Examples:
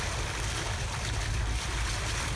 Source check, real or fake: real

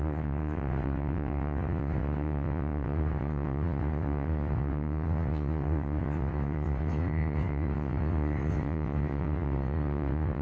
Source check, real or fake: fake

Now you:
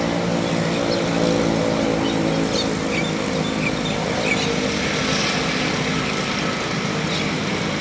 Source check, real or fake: real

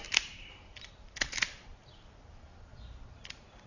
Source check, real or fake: fake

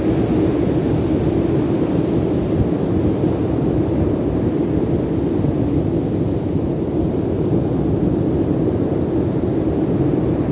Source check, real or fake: real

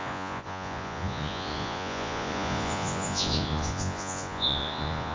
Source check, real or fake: fake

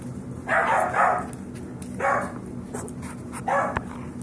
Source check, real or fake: real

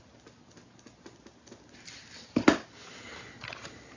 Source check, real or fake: real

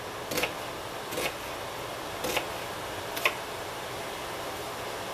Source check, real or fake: real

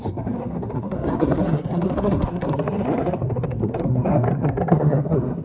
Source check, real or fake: fake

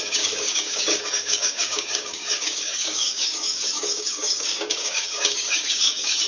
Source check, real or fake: fake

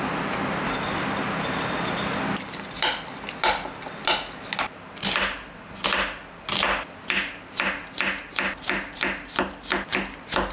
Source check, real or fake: real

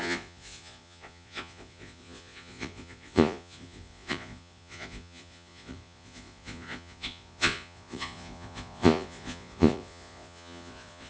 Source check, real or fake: fake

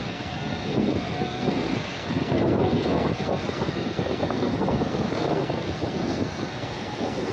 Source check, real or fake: fake